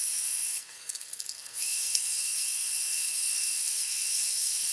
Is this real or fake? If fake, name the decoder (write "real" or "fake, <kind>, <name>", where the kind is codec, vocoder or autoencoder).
fake, codec, SNAC